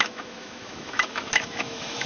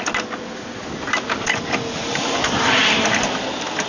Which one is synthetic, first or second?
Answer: first